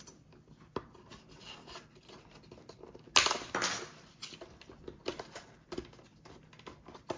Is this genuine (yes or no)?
yes